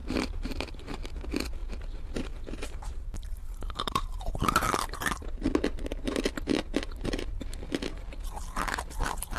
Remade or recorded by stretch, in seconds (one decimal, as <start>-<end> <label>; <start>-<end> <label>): 0.0-0.8 remade; 0.8-1.6 recorded; 1.6-4.4 remade; 4.4-9.4 recorded